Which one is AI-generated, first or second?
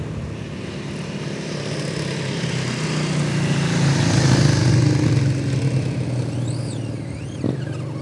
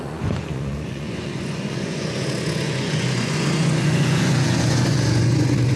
second